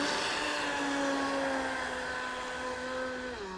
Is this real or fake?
real